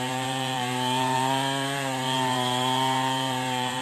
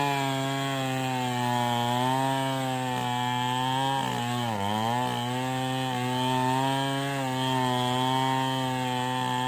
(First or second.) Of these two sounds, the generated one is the first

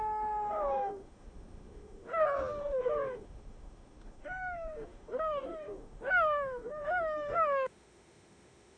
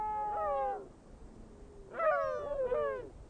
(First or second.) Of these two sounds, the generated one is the first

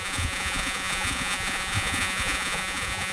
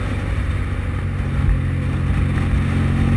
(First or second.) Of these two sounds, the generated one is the first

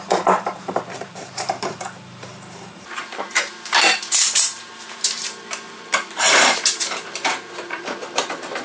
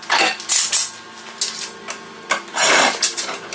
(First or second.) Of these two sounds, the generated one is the first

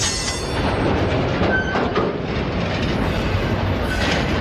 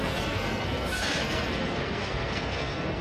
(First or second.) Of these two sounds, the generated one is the second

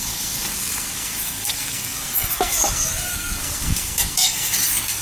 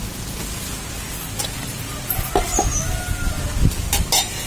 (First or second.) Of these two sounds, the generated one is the first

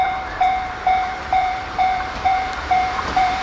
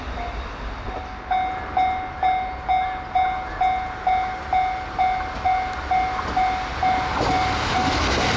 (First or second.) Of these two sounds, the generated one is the first